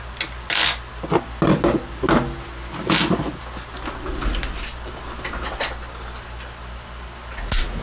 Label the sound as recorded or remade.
recorded